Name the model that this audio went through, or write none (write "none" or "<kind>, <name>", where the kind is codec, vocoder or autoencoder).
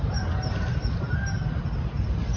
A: none